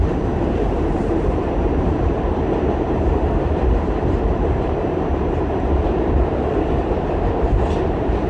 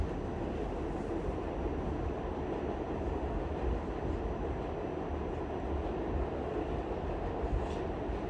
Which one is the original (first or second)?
second